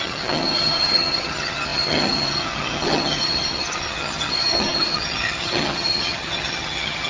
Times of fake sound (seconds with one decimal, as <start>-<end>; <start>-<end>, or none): 0.0-7.1